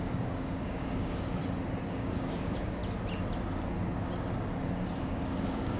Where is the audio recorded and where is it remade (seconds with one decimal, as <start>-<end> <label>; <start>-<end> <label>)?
0.0-1.4 remade; 1.4-1.9 recorded; 1.9-2.8 remade; 2.8-5.0 recorded; 5.0-5.8 remade

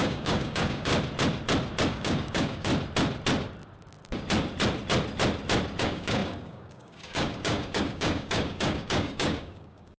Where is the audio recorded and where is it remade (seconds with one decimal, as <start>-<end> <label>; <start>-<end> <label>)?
0.0-0.9 remade; 0.9-1.9 recorded; 1.9-2.7 remade; 2.7-5.8 recorded; 5.8-10.0 remade

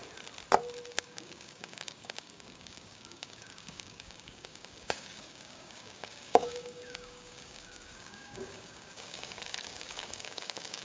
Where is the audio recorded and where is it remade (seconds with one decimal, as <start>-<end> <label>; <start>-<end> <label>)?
0.0-0.9 recorded; 0.9-10.8 remade

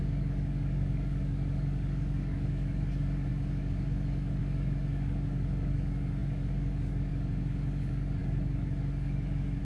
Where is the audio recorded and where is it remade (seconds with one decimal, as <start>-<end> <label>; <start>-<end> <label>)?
0.0-9.6 remade

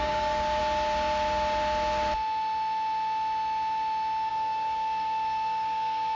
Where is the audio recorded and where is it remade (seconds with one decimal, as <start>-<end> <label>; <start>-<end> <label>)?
0.0-0.6 remade; 0.6-4.3 recorded; 4.3-6.1 remade